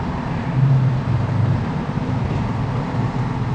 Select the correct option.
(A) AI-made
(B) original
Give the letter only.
B